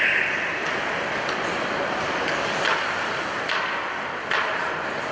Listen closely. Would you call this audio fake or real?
real